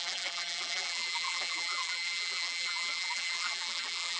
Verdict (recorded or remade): remade